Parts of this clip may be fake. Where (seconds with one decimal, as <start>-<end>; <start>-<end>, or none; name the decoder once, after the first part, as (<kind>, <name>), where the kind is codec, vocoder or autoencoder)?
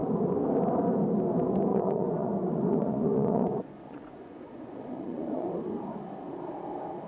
1.7-5.6 (vocoder, Vocos)